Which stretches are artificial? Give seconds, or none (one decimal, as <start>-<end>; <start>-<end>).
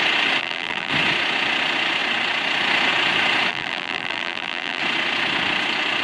0.4-0.9; 3.5-4.8